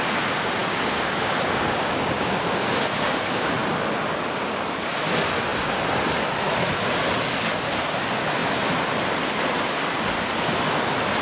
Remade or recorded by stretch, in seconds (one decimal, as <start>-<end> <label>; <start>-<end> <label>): 0.0-0.6 recorded; 0.6-2.8 remade; 2.8-11.2 recorded